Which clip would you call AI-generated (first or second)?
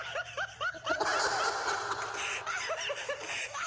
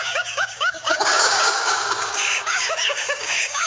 second